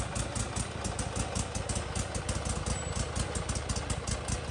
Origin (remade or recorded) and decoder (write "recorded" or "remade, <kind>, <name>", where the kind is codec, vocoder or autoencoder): recorded